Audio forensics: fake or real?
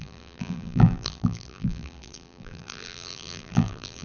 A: fake